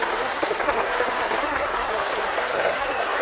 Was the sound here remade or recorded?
remade